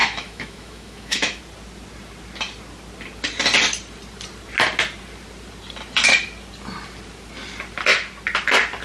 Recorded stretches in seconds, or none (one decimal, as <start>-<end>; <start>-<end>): 1.4-8.8